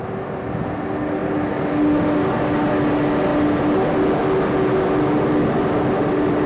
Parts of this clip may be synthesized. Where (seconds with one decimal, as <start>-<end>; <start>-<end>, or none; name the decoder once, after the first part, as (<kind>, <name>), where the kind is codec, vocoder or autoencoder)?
none